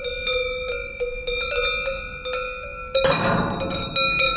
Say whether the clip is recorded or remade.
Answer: recorded